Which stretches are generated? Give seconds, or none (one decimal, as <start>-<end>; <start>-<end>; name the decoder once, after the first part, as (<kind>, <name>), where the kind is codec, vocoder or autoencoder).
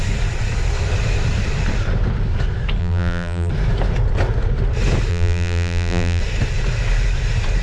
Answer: 2.8-3.5 (vocoder, BigVGAN v2); 5.1-6.2